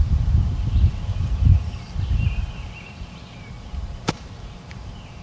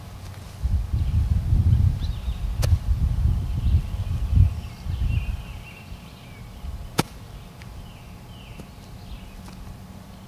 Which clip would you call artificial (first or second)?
first